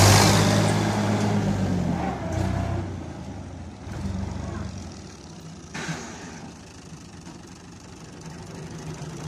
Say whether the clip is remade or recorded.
recorded